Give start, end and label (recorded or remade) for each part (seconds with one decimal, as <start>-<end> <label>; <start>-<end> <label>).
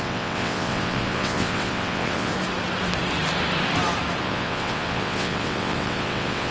0.0-2.3 remade; 2.3-4.2 recorded; 4.2-6.5 remade